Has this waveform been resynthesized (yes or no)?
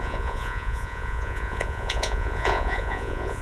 yes